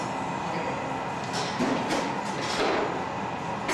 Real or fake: real